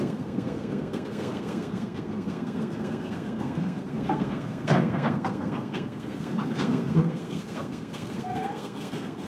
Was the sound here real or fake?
fake